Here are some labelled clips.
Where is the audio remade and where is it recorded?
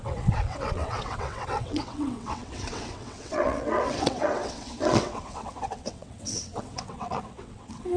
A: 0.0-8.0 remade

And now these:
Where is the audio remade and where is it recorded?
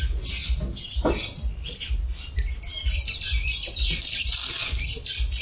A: 0.0-5.4 recorded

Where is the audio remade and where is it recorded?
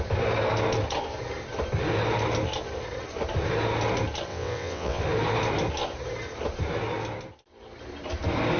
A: 0.0-4.3 recorded; 4.3-5.0 remade; 5.0-8.6 recorded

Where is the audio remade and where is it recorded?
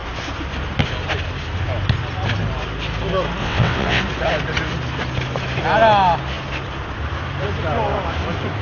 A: 0.0-3.4 recorded; 3.4-4.0 remade; 4.0-8.6 recorded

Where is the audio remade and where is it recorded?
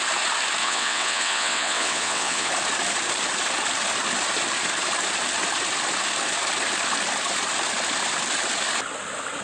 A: 0.0-0.6 recorded; 0.6-2.5 remade; 2.5-9.4 recorded